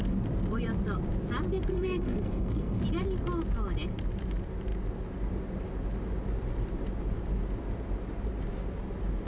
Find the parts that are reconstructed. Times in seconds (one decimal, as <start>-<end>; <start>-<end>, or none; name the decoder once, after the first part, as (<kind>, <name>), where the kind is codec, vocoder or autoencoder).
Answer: 1.7-2.8 (codec, SNAC)